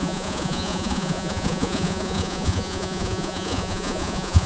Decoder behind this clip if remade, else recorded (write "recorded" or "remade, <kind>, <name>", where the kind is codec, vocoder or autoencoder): remade, vocoder, Vocos